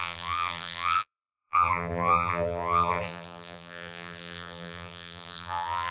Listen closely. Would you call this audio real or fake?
fake